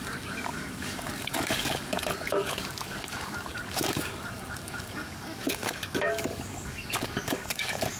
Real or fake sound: fake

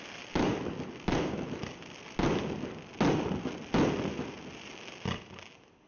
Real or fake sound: real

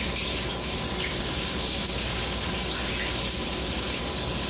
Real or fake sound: real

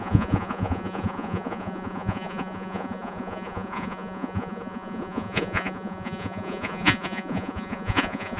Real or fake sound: fake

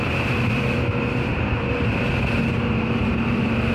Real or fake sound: fake